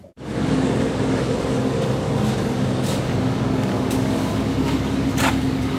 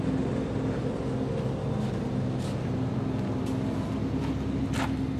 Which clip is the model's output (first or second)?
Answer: first